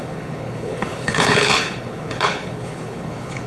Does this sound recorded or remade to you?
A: remade